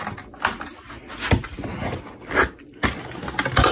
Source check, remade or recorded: recorded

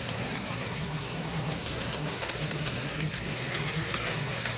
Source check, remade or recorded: remade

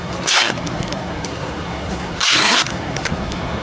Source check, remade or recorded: remade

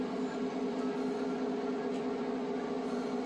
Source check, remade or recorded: recorded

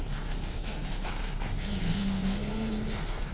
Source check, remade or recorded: remade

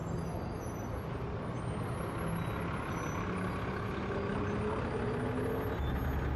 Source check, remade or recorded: recorded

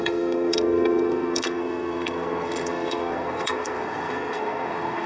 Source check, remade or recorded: remade